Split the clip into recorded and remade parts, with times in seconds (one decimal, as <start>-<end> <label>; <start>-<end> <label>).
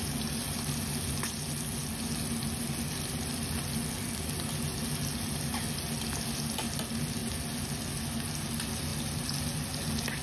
0.0-10.2 recorded